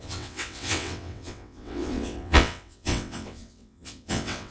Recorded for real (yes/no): no